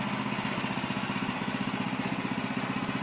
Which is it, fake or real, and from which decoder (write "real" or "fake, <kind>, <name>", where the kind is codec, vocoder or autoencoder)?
real